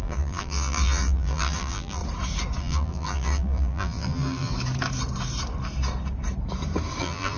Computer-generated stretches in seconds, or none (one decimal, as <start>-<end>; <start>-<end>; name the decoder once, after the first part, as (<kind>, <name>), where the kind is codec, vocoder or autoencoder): 0.0-2.0 (vocoder, BigVGAN v2); 2.6-4.5; 7.0-7.4